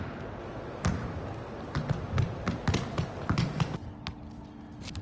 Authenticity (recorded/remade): recorded